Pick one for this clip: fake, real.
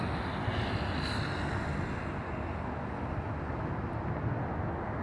real